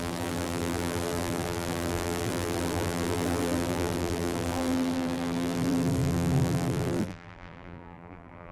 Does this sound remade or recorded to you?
remade